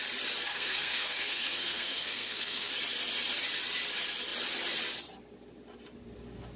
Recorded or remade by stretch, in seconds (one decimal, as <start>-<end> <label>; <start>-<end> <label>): 0.0-0.5 recorded; 0.5-2.7 remade; 2.7-6.6 recorded